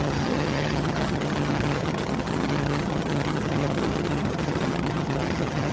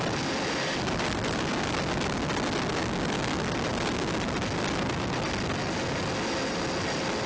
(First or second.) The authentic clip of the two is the second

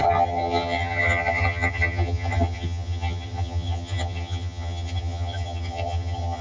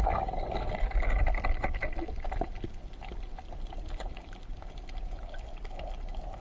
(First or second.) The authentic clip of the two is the second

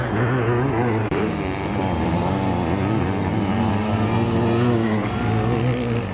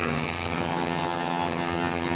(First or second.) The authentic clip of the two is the first